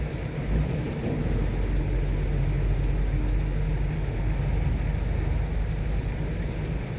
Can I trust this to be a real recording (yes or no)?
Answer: yes